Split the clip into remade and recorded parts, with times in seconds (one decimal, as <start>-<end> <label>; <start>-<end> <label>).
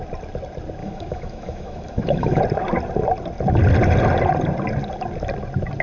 0.0-0.8 recorded; 0.8-2.4 remade; 2.4-5.8 recorded